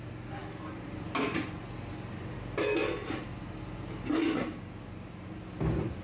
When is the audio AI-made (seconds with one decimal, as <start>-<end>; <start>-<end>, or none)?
2.8-3.3